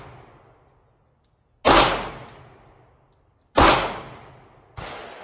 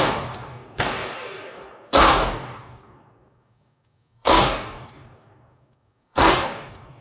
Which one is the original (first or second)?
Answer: first